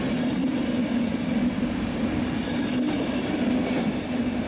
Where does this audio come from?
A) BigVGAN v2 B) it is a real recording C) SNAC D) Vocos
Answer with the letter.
B